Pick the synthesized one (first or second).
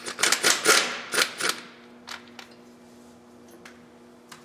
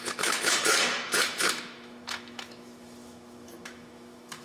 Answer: second